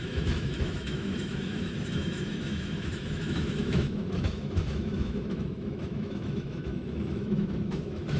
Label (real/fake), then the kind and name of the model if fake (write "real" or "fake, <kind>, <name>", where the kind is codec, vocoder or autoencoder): fake, autoencoder, DAC-VAE